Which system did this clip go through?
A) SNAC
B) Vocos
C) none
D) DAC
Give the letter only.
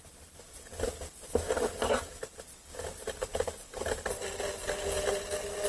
C